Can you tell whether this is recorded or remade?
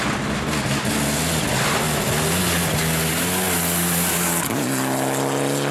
recorded